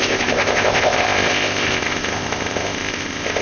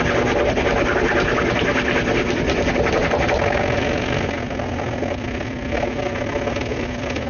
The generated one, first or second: first